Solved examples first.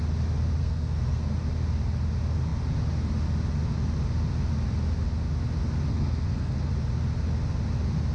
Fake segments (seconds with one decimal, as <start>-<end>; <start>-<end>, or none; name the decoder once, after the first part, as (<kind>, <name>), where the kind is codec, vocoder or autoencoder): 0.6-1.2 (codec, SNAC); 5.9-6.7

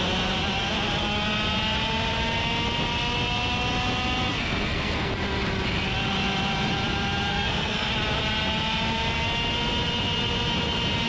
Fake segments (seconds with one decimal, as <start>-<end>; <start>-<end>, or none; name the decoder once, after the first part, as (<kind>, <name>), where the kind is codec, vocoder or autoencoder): 4.3-5.1 (codec, SNAC); 7.3-7.9

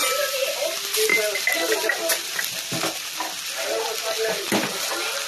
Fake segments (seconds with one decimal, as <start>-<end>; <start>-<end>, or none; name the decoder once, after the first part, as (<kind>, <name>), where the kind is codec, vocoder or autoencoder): none